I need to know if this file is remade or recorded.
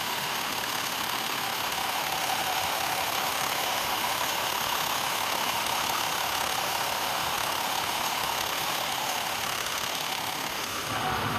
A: remade